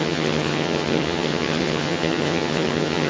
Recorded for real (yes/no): no